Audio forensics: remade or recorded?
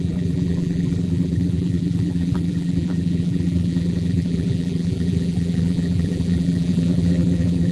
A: remade